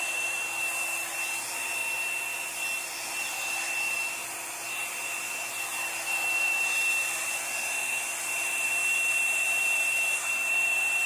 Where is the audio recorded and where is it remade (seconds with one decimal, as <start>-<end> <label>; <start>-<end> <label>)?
0.0-1.8 remade; 1.8-3.0 recorded; 3.0-11.1 remade